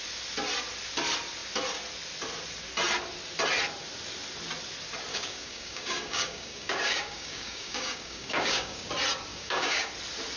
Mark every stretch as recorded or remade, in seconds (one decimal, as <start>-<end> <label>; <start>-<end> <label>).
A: 0.0-5.1 recorded; 5.1-8.9 remade; 8.9-9.3 recorded; 9.3-9.9 remade; 9.9-10.4 recorded

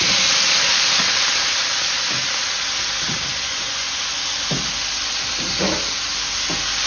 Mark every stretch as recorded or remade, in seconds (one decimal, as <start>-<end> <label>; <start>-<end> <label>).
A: 0.0-3.3 recorded; 3.3-4.0 remade; 4.0-6.9 recorded

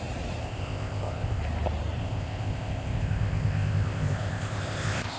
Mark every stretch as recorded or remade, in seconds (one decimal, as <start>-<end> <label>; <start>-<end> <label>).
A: 0.0-0.4 recorded; 0.4-1.4 remade; 1.4-2.0 recorded; 2.0-5.2 remade